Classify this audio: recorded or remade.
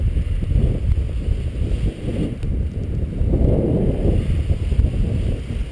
recorded